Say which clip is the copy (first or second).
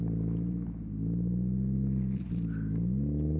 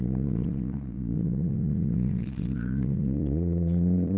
second